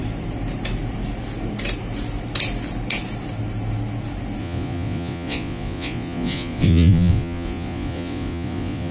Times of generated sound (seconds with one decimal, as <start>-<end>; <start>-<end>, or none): 4.4-8.9